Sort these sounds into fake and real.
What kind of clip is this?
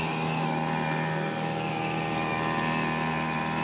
real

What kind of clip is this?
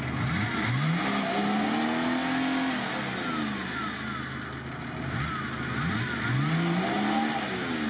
real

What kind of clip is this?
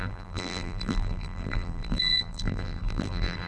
fake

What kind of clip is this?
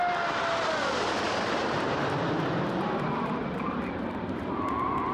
real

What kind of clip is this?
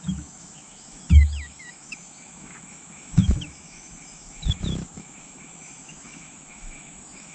fake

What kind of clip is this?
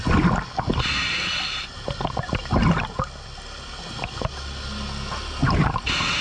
real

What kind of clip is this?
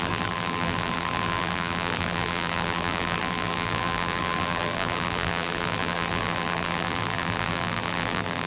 fake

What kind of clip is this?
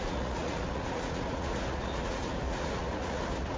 fake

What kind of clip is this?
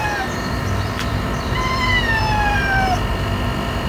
fake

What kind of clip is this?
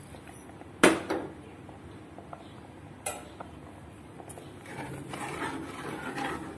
real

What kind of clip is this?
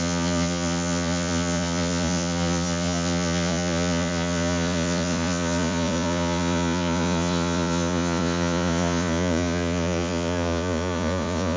fake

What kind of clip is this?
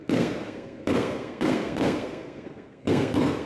fake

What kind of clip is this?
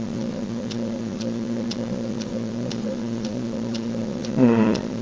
fake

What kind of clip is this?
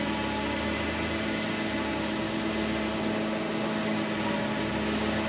real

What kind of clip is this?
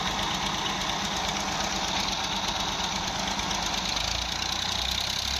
real